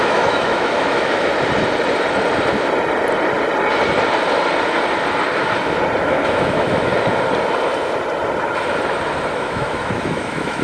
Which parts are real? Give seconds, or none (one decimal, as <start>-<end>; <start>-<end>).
1.3-6.0; 6.9-9.3